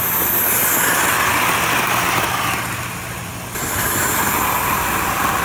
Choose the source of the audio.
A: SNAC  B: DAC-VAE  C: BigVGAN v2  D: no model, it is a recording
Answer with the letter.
D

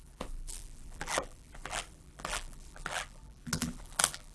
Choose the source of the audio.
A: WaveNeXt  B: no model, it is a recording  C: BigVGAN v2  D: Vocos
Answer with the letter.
C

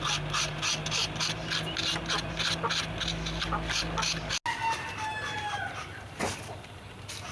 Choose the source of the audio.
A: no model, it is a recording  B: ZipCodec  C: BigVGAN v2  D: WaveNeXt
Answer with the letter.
A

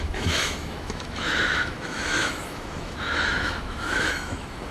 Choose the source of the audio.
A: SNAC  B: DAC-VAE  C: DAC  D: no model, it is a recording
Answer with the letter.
B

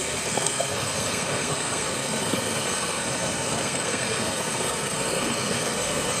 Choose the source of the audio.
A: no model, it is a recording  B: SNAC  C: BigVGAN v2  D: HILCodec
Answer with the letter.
B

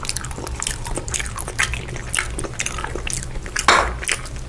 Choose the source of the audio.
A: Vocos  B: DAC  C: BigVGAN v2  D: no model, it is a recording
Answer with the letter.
D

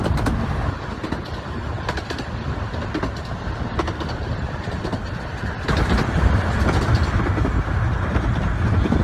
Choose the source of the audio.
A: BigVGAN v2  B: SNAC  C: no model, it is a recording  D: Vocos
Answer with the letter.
C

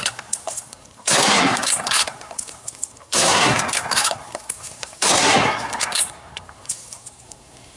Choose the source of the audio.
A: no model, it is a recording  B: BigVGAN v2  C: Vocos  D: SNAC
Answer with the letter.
D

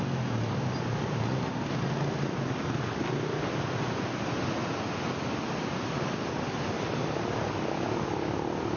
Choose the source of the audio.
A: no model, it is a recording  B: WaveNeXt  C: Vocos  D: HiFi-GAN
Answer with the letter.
A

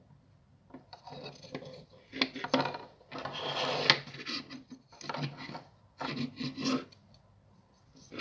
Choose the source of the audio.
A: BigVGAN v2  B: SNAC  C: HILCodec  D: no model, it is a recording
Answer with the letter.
D